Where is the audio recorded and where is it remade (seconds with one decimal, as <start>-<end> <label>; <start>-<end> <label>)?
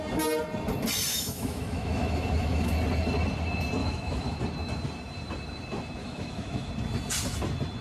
0.0-1.1 recorded; 1.1-2.7 remade; 2.7-3.8 recorded; 3.8-4.4 remade; 4.4-6.0 recorded; 6.0-6.7 remade; 6.7-7.8 recorded